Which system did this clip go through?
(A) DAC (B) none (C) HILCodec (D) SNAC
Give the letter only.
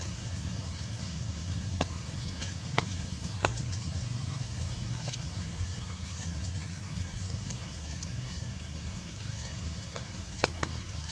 D